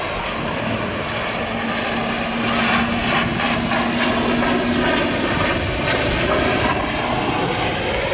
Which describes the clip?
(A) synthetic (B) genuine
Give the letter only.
B